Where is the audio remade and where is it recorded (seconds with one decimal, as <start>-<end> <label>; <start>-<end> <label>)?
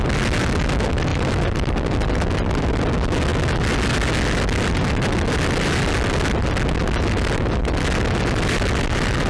0.0-1.1 recorded; 1.1-2.8 remade; 2.8-9.3 recorded